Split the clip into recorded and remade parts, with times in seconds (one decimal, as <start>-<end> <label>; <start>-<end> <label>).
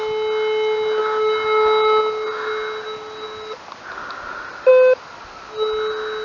0.0-6.2 recorded